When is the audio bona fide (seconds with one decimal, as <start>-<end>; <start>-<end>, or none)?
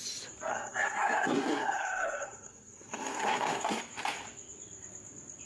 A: 0.0-0.5; 3.8-5.5